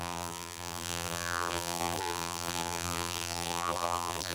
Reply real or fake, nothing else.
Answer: fake